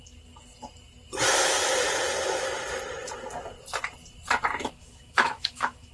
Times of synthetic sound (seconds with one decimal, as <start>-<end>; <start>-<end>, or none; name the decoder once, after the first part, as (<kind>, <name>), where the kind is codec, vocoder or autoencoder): 4.6-5.9 (autoencoder, DAC-VAE)